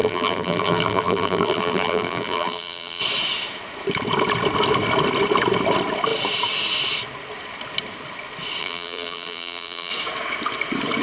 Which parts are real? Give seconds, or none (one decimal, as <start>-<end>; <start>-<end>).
3.0-8.6; 9.9-11.0